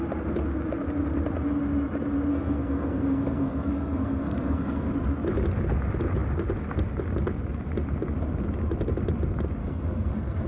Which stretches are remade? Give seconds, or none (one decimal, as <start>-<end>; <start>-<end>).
2.3-4.9; 9.6-10.5